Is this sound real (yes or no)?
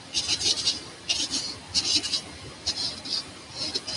yes